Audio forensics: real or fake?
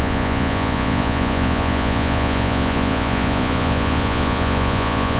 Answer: fake